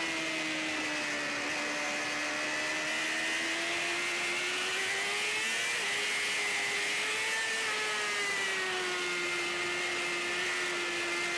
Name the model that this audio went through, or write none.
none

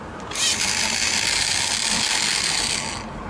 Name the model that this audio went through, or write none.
none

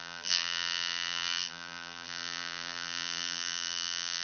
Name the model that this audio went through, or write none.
vocoder, BigVGAN v2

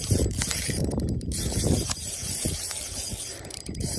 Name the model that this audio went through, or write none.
vocoder, BigVGAN v2